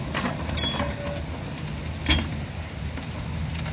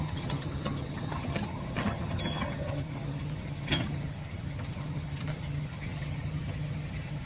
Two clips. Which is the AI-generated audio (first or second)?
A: second